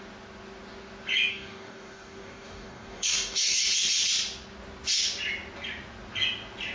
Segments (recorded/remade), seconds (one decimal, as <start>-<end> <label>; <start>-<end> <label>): 0.0-1.3 recorded; 1.3-3.6 remade; 3.6-6.7 recorded